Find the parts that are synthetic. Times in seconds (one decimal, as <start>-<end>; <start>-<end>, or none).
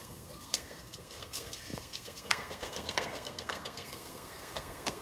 0.0-5.0